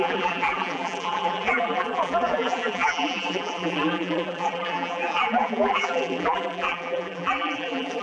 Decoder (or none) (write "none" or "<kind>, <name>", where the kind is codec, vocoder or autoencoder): vocoder, BigVGAN v2